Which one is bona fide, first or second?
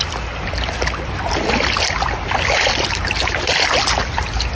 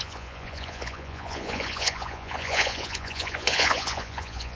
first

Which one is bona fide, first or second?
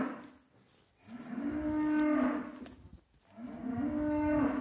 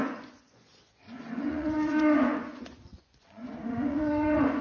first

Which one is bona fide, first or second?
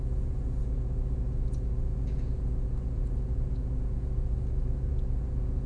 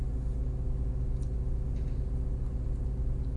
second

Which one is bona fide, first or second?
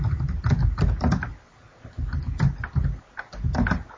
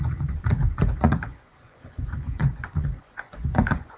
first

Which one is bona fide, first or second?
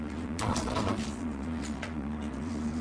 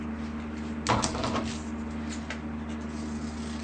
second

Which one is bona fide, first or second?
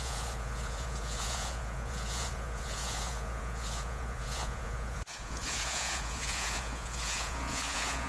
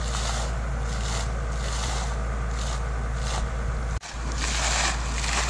second